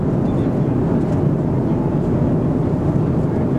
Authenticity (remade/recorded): recorded